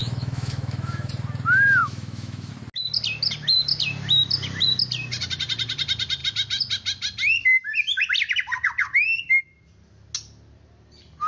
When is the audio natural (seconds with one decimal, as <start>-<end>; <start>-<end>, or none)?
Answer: 1.1-1.8; 2.5-11.3